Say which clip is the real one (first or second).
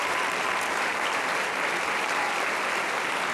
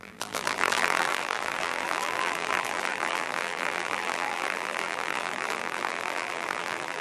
first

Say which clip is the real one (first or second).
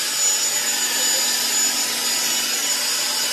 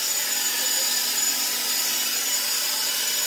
first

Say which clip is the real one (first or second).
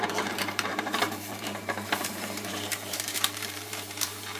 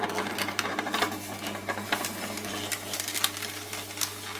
second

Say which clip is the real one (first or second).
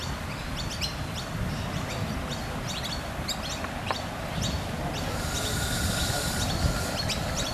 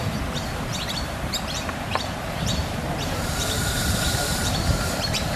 first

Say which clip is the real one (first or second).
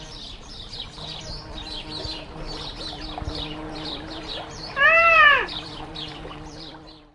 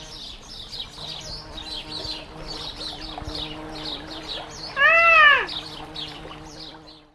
second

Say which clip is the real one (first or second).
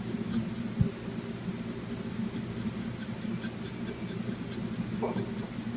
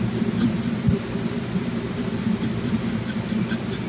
first